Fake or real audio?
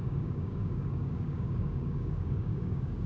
fake